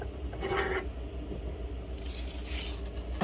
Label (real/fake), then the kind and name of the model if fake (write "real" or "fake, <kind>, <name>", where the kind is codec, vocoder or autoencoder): real